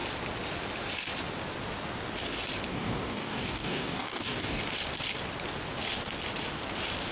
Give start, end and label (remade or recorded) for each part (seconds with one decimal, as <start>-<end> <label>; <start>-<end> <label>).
0.0-2.7 recorded; 2.7-4.6 remade; 4.6-7.1 recorded